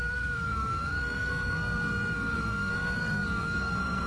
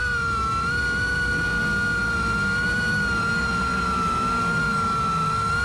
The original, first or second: second